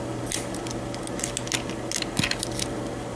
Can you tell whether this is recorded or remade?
recorded